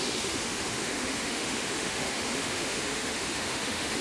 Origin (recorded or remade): remade